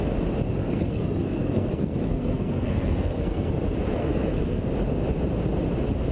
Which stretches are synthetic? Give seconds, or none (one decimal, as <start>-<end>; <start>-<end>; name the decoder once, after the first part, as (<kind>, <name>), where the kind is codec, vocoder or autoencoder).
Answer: 0.6-3.5 (codec, SNAC); 4.0-4.7